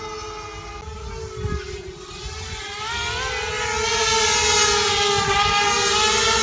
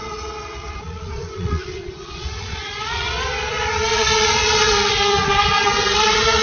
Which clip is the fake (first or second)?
second